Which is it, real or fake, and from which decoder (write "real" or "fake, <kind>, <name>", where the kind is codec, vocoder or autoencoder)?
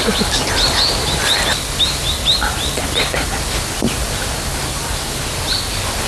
real